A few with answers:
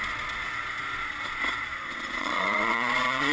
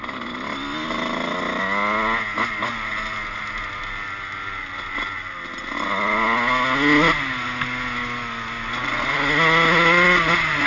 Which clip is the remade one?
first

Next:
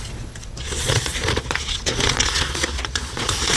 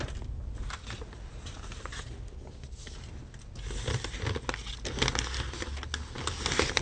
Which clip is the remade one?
first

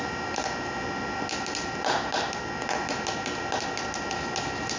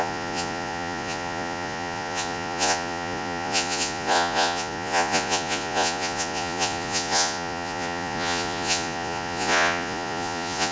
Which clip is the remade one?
second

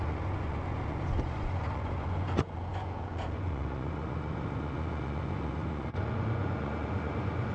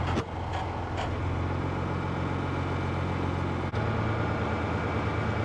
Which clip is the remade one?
first